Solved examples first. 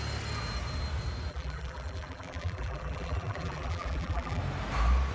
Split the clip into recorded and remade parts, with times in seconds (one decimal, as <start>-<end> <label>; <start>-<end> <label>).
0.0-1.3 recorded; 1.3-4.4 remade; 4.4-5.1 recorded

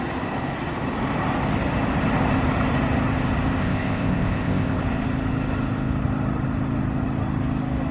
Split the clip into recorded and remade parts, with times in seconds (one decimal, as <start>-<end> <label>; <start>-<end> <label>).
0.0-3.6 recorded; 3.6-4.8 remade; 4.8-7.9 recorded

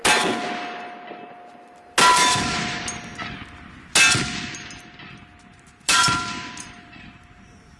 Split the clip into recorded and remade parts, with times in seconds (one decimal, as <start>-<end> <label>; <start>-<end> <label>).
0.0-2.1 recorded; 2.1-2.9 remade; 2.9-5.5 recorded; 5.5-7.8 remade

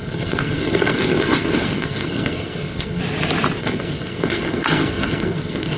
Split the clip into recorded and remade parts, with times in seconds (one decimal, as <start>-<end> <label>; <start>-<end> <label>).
0.0-3.0 remade; 3.0-3.6 recorded; 3.6-5.8 remade